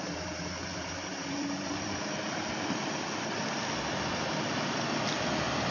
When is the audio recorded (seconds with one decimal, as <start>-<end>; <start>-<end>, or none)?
0.0-0.7; 4.1-5.7